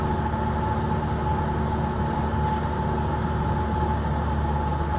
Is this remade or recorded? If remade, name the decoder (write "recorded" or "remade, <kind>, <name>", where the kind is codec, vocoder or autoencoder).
recorded